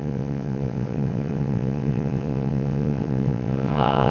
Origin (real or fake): fake